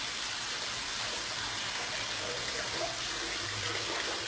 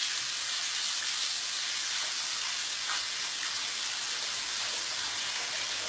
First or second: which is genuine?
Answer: second